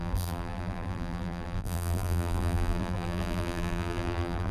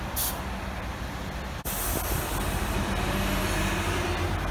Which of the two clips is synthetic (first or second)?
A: first